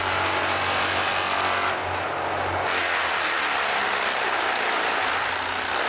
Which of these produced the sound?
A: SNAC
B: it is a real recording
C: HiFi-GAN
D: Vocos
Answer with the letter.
B